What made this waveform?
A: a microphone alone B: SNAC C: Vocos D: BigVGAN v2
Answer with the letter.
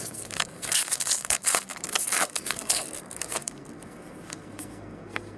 B